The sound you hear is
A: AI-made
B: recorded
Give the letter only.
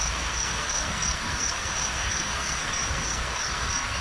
A